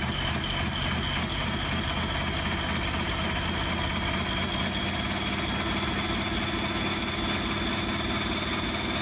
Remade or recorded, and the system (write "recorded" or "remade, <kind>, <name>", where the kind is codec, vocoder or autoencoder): recorded